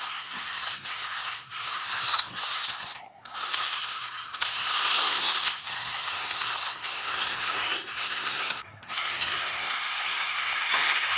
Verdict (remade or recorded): remade